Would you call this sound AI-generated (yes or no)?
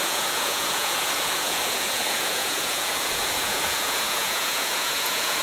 yes